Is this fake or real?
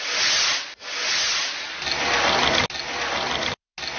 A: real